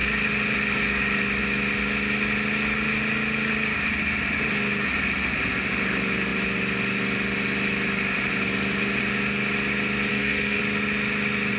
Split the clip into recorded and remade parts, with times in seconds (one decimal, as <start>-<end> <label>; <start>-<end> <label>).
0.0-10.1 recorded; 10.1-10.6 remade; 10.6-11.6 recorded